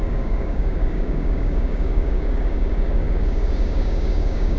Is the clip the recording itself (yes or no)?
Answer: no